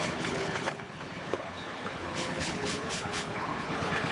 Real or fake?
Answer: fake